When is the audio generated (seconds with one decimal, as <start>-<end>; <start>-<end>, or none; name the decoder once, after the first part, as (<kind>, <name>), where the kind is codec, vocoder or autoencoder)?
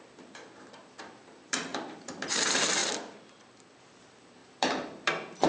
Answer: 0.0-2.8 (vocoder, BigVGAN v2); 3.8-5.5